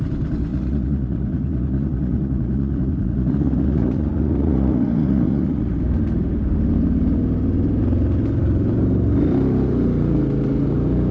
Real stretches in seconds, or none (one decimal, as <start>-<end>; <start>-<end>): 0.0-0.5; 5.7-11.1